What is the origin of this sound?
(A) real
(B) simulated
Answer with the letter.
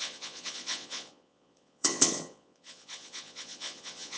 B